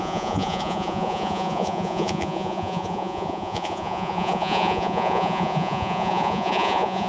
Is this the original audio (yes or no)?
no